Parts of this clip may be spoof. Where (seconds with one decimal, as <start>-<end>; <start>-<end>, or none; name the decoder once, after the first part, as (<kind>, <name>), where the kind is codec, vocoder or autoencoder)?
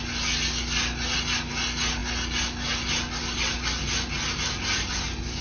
none